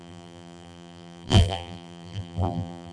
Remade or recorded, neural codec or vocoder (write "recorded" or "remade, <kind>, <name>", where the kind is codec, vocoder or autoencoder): remade, vocoder, BigVGAN v2